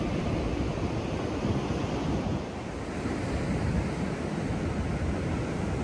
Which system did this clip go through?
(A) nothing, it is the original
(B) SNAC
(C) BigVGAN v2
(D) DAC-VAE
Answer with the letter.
A